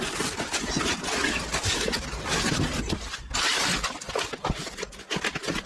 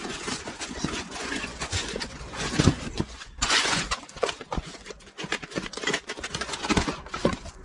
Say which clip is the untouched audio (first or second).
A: first